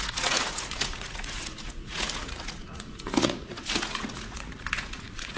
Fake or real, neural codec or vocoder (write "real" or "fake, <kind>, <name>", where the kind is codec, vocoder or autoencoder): fake, vocoder, Vocos